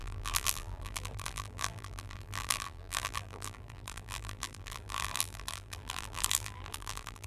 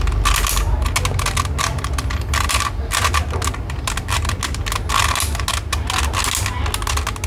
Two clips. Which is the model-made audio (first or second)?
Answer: first